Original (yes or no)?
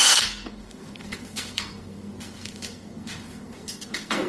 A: no